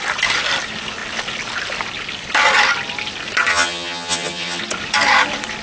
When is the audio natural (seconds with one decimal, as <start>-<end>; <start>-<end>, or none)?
0.0-3.5; 4.6-5.6